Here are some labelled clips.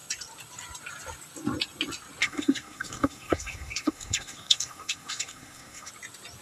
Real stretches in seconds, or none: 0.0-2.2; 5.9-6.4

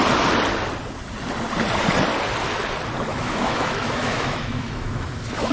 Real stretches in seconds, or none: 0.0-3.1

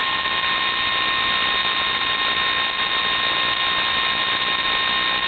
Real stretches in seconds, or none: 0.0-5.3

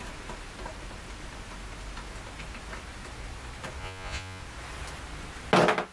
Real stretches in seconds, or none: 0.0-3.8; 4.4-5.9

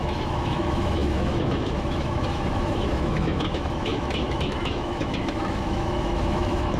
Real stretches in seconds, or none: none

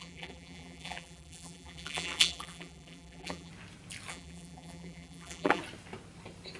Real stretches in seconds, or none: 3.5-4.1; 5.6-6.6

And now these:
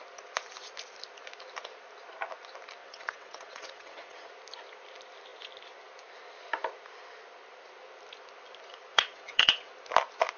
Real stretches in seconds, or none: 0.0-2.8; 4.3-8.9; 9.7-10.4